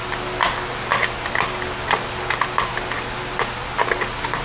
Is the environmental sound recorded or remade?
recorded